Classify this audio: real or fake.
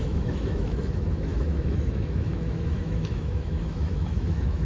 fake